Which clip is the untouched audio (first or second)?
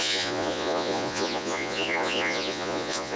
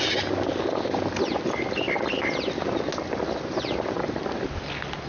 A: second